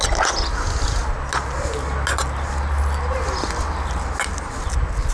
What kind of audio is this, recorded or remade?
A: recorded